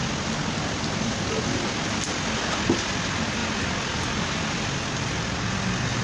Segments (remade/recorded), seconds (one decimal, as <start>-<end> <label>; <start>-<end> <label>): 0.0-6.0 recorded